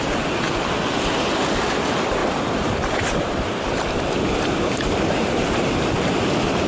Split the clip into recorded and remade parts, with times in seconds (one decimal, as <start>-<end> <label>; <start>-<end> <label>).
0.0-2.2 recorded; 2.2-6.1 remade; 6.1-6.7 recorded